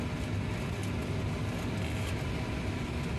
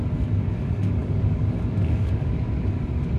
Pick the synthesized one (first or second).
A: second